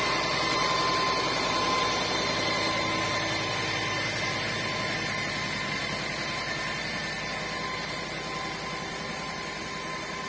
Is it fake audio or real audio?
real